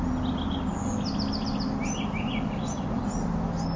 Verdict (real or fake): real